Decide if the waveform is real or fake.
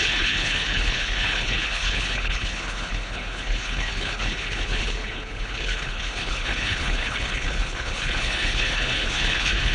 fake